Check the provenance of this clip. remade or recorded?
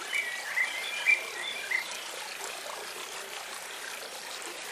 remade